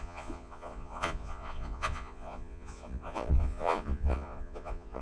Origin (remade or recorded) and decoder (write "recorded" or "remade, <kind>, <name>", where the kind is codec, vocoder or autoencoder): remade, vocoder, Vocos